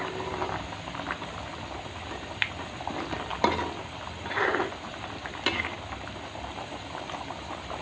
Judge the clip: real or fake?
real